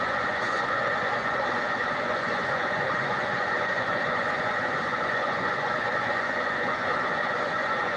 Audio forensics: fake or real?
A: fake